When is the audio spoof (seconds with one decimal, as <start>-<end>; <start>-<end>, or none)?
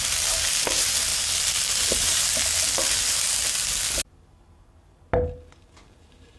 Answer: none